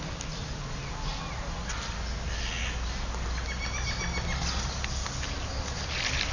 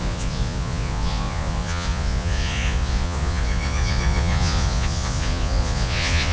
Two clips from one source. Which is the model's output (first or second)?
second